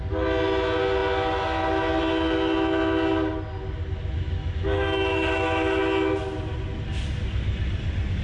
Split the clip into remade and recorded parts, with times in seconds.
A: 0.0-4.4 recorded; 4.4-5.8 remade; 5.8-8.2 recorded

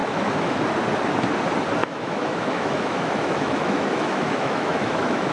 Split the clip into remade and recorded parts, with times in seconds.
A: 0.0-0.6 remade; 0.6-1.8 recorded; 1.8-5.3 remade

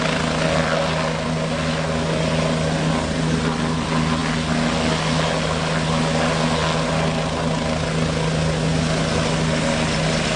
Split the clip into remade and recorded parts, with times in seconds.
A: 0.0-10.4 recorded

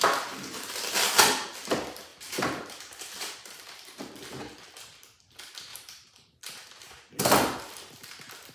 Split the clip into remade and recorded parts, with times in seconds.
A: 0.0-2.1 recorded; 2.1-4.1 remade; 4.1-5.7 recorded; 5.7-7.2 remade; 7.2-8.5 recorded

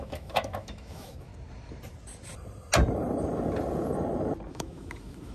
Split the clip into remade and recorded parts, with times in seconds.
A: 0.0-1.3 remade; 1.3-4.5 recorded; 4.5-5.3 remade